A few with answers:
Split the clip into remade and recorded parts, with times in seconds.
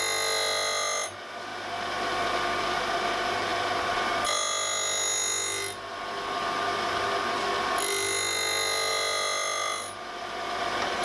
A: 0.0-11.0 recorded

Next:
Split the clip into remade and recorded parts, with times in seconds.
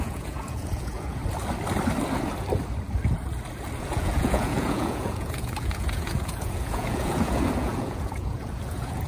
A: 0.0-1.2 remade; 1.2-3.8 recorded; 3.8-9.1 remade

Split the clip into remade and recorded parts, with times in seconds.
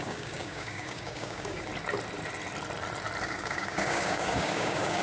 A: 0.0-1.7 remade; 1.7-3.2 recorded; 3.2-5.0 remade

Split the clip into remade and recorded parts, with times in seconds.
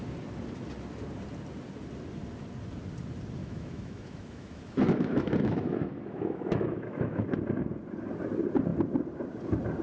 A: 0.0-3.4 recorded; 3.4-7.2 remade; 7.2-9.8 recorded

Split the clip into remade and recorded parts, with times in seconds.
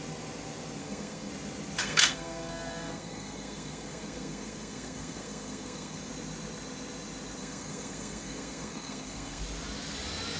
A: 0.0-0.8 recorded; 0.8-1.3 remade; 1.3-1.8 recorded; 1.8-6.1 remade; 6.1-7.4 recorded; 7.4-9.4 remade; 9.4-10.4 recorded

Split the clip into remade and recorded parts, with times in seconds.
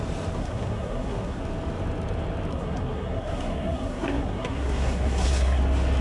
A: 0.0-0.4 recorded; 0.4-1.4 remade; 1.4-2.5 recorded; 2.5-5.6 remade; 5.6-6.0 recorded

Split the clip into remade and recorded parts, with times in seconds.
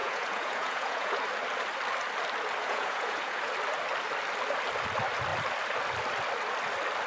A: 0.0-1.2 remade; 1.2-2.6 recorded; 2.6-3.5 remade; 3.5-7.1 recorded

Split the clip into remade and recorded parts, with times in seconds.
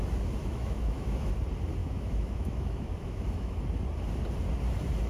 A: 0.0-0.4 recorded; 0.4-1.3 remade; 1.3-1.8 recorded; 1.8-3.6 remade; 3.6-5.1 recorded